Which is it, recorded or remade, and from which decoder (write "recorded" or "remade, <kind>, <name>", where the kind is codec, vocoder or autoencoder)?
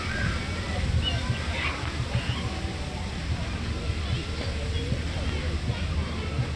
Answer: recorded